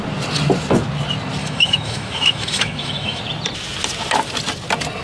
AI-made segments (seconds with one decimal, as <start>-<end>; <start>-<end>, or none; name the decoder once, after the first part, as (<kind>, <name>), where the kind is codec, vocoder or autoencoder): 1.4-3.2 (autoencoder, DAC-VAE)